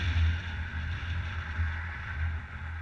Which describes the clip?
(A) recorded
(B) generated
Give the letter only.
B